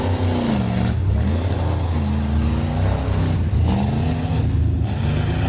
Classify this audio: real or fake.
real